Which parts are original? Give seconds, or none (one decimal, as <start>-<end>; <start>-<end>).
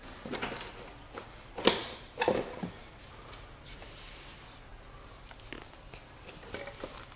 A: 0.0-7.2